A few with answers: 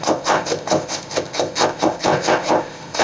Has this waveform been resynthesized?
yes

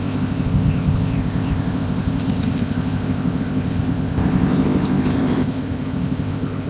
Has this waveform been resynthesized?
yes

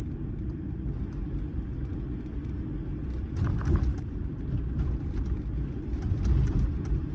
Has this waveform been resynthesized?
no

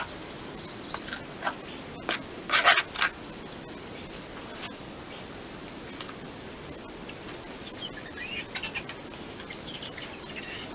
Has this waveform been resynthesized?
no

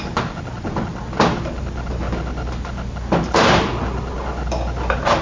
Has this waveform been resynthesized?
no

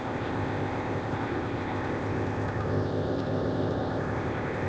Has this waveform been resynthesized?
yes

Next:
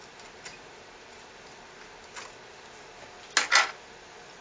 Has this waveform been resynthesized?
no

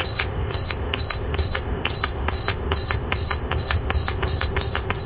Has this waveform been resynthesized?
yes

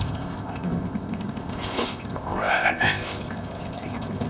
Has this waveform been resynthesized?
yes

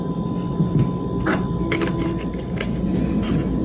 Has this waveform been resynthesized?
no